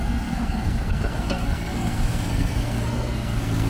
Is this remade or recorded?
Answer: remade